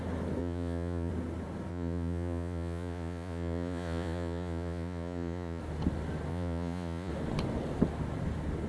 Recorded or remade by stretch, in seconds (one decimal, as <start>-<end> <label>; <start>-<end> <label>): 0.0-0.4 recorded; 0.4-1.1 remade; 1.1-1.7 recorded; 1.7-5.6 remade; 5.6-6.3 recorded; 6.3-7.1 remade; 7.1-8.7 recorded